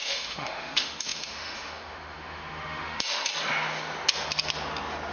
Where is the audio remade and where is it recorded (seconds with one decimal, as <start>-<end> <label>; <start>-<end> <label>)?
0.0-3.3 remade; 3.3-5.1 recorded